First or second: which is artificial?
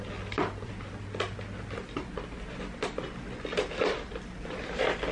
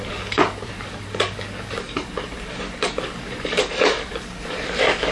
second